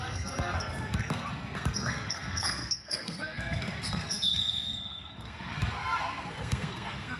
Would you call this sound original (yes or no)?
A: no